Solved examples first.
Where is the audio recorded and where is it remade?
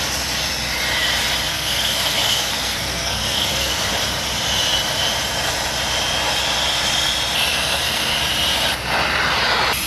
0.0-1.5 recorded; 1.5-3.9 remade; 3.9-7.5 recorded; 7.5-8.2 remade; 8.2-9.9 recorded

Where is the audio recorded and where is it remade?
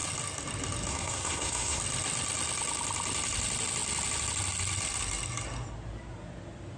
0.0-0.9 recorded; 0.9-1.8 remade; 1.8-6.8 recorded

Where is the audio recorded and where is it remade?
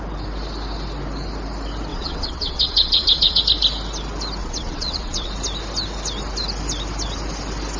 0.0-1.9 recorded; 1.9-3.4 remade; 3.4-4.4 recorded; 4.4-5.3 remade; 5.3-7.8 recorded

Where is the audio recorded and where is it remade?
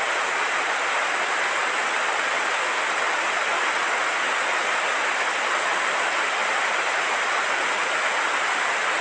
0.0-9.0 recorded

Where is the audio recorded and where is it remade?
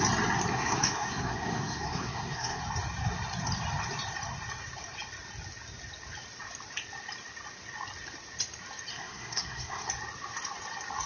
0.0-0.5 recorded; 0.5-2.6 remade; 2.6-8.9 recorded; 8.9-9.9 remade; 9.9-11.1 recorded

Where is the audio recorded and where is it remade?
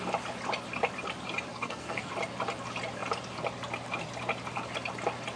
0.0-1.5 recorded; 1.5-2.1 remade; 2.1-5.4 recorded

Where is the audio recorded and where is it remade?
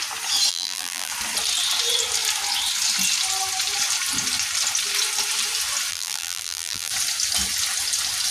0.0-0.5 recorded; 0.5-1.1 remade; 1.1-5.9 recorded; 5.9-6.9 remade; 6.9-8.3 recorded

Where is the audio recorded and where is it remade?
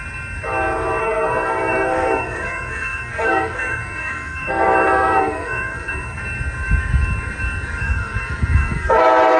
0.0-1.0 recorded; 1.0-6.2 remade; 6.2-7.8 recorded; 7.8-9.0 remade; 9.0-9.4 recorded